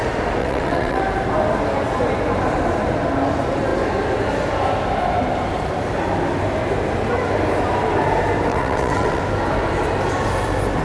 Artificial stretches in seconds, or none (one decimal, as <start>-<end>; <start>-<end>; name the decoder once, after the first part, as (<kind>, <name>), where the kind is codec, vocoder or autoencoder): 0.4-1.0 (vocoder, WaveNeXt); 8.5-9.2